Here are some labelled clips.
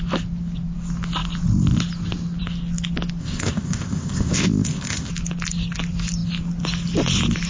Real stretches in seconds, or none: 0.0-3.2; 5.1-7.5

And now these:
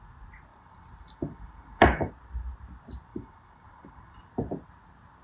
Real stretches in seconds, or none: 0.0-0.5; 2.1-3.1; 4.2-5.2

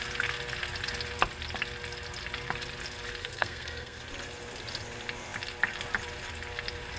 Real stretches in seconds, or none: 0.0-3.2; 4.0-7.0

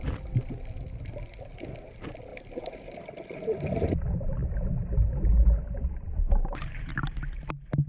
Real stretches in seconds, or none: 0.0-2.3; 3.0-4.4; 6.9-7.9